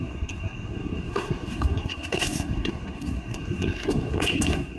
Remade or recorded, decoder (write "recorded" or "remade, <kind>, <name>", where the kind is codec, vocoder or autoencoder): remade, codec, SNAC